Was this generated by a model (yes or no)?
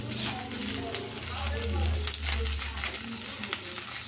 no